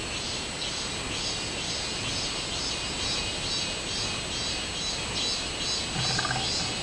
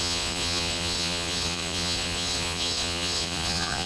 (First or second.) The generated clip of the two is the second